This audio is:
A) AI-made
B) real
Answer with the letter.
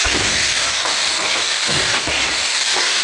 A